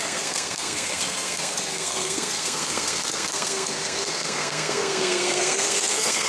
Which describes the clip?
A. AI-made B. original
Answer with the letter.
A